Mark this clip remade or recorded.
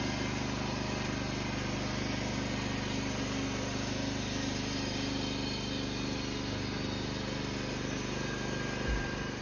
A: recorded